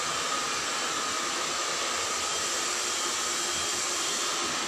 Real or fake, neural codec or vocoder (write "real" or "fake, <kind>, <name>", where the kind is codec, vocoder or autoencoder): real